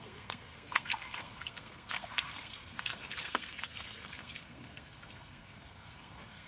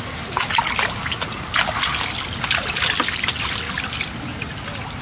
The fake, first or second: first